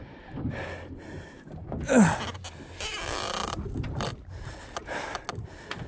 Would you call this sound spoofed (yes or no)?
no